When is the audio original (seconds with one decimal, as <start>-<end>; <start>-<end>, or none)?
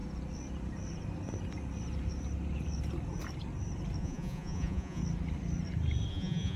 0.0-4.0; 5.0-6.1